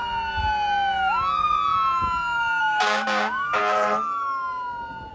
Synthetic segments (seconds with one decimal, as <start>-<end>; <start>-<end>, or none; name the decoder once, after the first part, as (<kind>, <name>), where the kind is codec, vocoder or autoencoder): 2.6-3.6 (codec, DAC)